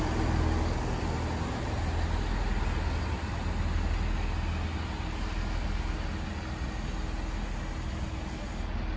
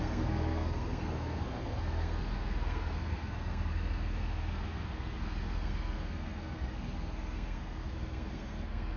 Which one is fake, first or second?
second